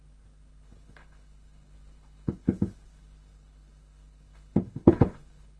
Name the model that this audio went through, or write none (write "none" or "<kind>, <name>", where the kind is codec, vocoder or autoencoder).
codec, HILCodec